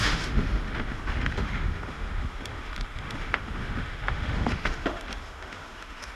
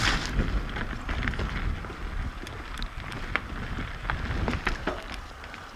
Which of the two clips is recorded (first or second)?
second